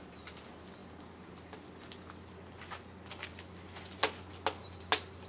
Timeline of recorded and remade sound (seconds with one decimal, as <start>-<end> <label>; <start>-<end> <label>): 0.0-5.3 recorded